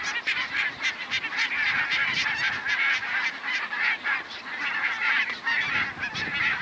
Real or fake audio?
real